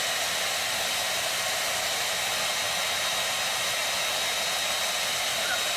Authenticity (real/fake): real